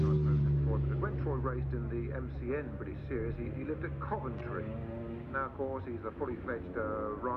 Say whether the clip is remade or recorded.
recorded